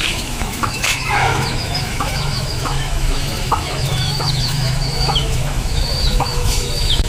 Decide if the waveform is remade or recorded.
remade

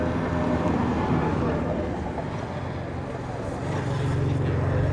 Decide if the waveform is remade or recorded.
recorded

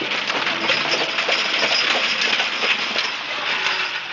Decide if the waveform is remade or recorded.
recorded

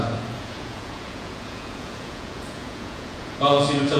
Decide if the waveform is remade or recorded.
remade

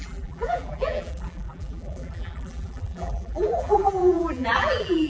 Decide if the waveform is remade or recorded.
remade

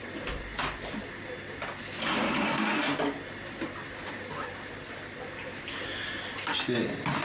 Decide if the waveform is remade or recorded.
recorded